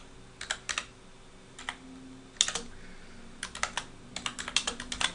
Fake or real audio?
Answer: real